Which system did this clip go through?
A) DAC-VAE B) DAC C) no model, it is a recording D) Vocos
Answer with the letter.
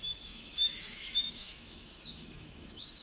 A